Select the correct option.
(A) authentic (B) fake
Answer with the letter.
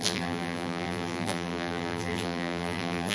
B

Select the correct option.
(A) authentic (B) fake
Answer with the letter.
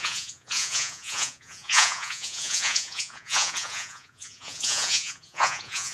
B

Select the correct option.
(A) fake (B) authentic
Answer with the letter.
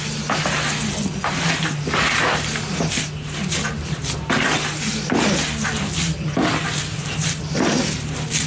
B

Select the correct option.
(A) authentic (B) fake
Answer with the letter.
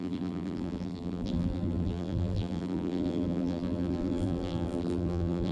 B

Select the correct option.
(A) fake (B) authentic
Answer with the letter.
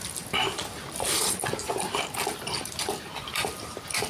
A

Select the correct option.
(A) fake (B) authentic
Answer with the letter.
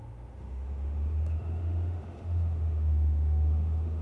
A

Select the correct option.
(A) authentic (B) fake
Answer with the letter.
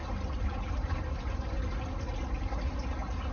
A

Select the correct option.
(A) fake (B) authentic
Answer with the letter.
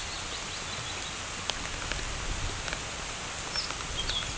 B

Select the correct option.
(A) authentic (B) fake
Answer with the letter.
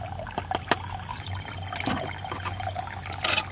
A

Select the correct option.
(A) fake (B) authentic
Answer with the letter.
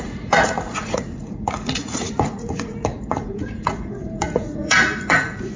A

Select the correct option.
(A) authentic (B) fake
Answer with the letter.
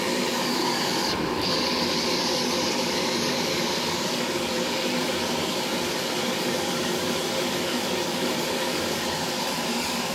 B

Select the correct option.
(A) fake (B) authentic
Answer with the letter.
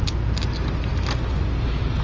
B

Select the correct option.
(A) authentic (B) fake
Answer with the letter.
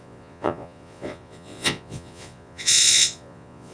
B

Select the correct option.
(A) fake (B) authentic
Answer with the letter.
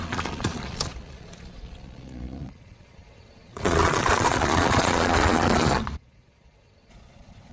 A